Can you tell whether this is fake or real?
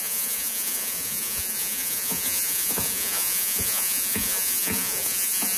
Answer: fake